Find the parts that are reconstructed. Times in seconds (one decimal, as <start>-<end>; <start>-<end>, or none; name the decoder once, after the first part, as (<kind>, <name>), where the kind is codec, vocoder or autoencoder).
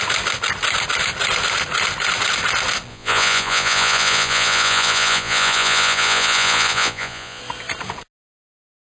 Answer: 2.9-7.4 (vocoder, Vocos)